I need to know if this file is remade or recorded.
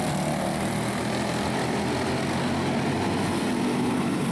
recorded